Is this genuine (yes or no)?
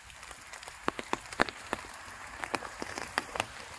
no